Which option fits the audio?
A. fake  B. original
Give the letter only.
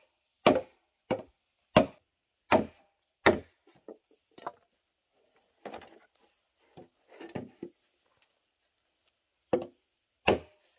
B